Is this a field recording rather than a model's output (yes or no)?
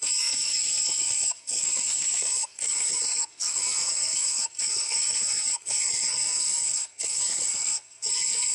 no